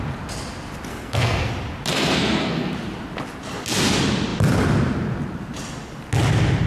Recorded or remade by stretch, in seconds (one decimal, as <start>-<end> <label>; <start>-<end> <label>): 0.0-0.9 recorded; 0.9-1.5 remade; 1.5-1.9 recorded; 1.9-2.7 remade; 2.7-6.7 recorded